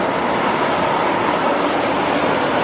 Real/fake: real